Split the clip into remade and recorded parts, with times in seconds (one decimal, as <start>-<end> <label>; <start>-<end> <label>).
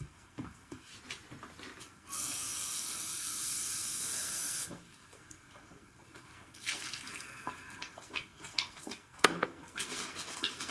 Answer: 0.0-0.9 remade; 0.9-1.8 recorded; 1.8-10.7 remade